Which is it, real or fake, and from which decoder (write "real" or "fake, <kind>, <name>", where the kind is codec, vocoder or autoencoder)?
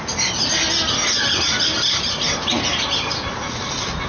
real